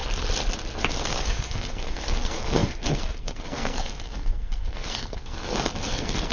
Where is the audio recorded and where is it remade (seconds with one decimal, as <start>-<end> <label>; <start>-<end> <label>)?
0.0-0.8 recorded; 0.8-6.3 remade